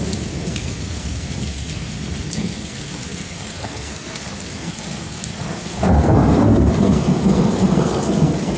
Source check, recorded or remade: remade